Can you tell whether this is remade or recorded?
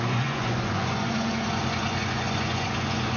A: remade